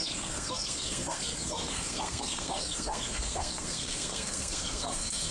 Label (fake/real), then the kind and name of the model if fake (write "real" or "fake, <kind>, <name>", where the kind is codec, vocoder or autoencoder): fake, codec, SNAC